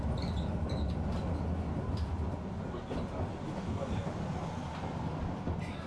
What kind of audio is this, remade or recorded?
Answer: recorded